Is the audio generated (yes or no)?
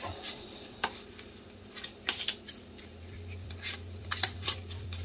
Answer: yes